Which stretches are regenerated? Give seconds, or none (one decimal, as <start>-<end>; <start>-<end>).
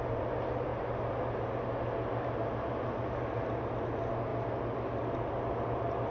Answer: none